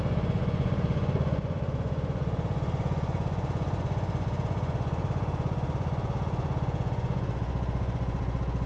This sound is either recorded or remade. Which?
remade